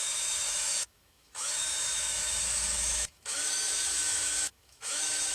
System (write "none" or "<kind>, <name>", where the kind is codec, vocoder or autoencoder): autoencoder, DAC-VAE